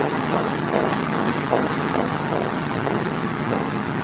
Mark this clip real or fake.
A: fake